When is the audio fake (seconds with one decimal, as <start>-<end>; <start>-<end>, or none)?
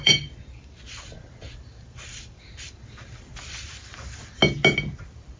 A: 0.0-4.4; 5.0-5.4